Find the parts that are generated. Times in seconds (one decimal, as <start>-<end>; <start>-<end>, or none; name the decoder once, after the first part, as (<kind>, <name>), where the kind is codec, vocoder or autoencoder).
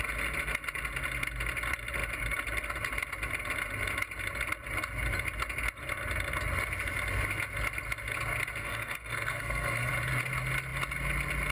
8.6-9.9 (codec, SNAC)